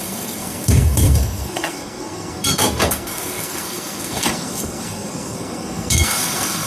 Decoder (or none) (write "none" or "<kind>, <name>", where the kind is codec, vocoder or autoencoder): codec, SNAC